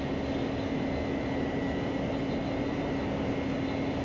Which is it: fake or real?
real